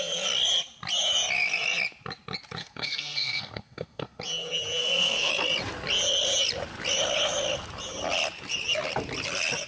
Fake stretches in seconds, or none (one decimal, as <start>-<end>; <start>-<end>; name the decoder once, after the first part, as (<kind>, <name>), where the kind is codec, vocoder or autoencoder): 2.6-4.2 (codec, SNAC); 4.8-5.3